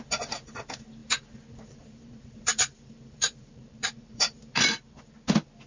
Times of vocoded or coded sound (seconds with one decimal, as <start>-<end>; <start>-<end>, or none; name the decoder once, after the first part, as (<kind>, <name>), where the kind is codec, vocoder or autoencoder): 1.0-4.4 (vocoder, BigVGAN v2)